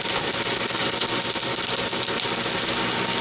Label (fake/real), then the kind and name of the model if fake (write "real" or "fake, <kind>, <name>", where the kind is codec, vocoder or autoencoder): real